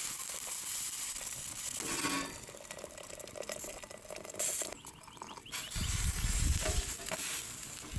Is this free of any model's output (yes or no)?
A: yes